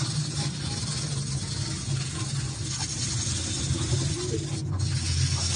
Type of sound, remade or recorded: recorded